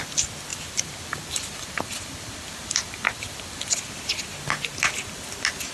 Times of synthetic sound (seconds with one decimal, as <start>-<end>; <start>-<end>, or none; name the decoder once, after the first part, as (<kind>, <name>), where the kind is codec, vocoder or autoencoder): 0.5-3.9 (vocoder, BigVGAN v2)